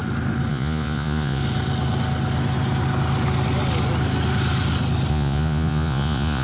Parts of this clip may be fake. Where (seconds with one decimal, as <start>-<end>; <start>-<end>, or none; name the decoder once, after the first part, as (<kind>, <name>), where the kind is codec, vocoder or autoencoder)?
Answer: 0.5-1.4 (vocoder, Vocos); 5.1-6.4